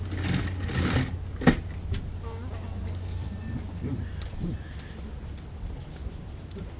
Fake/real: real